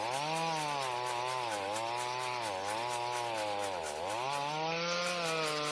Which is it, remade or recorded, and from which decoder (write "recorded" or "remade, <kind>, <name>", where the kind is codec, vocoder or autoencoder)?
recorded